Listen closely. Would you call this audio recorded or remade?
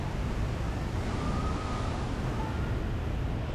recorded